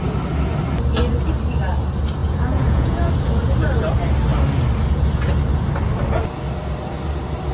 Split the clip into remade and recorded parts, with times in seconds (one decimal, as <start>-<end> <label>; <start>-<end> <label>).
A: 0.0-2.2 recorded; 2.2-3.1 remade; 3.1-7.5 recorded

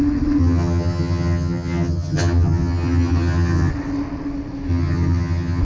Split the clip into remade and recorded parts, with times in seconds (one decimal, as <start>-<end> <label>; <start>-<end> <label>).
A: 0.0-0.4 recorded; 0.4-3.7 remade; 3.7-4.7 recorded; 4.7-5.6 remade

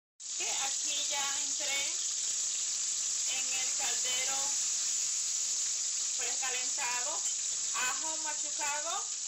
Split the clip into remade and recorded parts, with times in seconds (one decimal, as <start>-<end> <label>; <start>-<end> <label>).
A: 0.0-4.9 recorded; 4.9-5.5 remade; 5.5-9.3 recorded

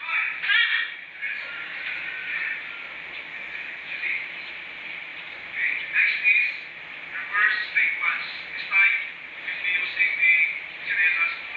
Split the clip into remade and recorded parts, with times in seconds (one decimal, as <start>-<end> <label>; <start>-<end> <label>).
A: 0.0-2.2 recorded; 2.2-2.7 remade; 2.7-5.1 recorded; 5.1-6.5 remade; 6.5-7.2 recorded; 7.2-9.0 remade; 9.0-11.6 recorded

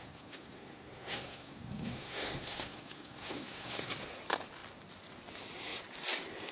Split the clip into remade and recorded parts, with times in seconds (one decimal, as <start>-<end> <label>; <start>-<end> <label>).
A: 0.0-3.9 remade; 3.9-6.5 recorded